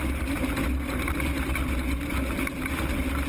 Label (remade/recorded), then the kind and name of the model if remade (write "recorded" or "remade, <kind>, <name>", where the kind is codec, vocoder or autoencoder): recorded